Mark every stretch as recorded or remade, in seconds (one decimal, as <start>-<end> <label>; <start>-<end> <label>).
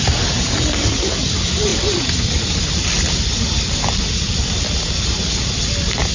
0.0-6.1 recorded